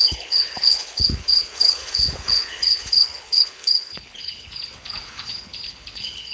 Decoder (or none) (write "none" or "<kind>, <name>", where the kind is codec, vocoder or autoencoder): codec, HILCodec